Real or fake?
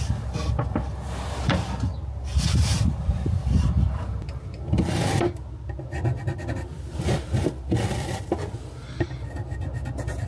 real